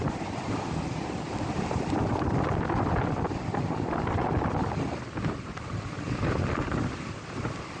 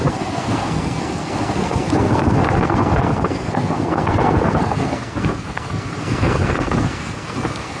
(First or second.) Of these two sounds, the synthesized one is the second